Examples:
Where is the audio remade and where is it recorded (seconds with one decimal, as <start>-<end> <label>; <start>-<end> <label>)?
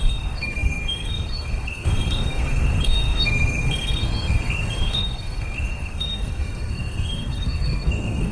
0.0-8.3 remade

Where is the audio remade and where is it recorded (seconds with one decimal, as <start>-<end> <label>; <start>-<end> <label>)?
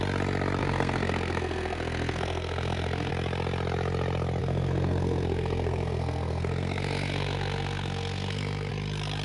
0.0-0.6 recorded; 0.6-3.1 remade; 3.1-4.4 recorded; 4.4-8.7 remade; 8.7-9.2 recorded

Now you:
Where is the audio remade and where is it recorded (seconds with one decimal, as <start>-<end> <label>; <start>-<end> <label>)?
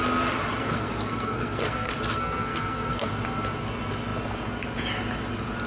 0.0-0.6 recorded; 0.6-3.1 remade; 3.1-5.7 recorded